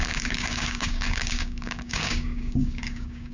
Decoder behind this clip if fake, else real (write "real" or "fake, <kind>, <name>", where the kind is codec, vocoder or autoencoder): fake, codec, DAC